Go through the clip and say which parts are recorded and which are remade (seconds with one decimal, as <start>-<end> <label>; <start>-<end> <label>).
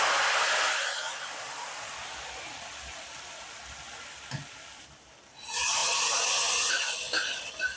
0.0-7.8 recorded